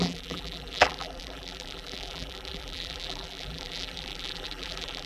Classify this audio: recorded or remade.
remade